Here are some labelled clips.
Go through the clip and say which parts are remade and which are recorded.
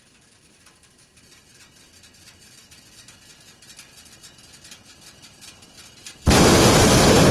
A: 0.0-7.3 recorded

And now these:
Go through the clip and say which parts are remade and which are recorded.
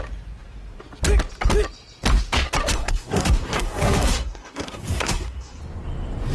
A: 0.0-2.7 recorded; 2.7-5.6 remade; 5.6-6.3 recorded